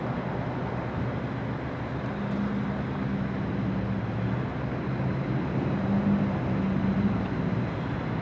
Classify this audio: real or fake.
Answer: real